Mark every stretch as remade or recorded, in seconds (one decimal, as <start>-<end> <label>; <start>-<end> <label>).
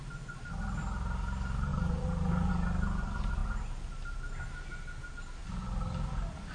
0.0-1.7 recorded; 1.7-2.5 remade; 2.5-6.5 recorded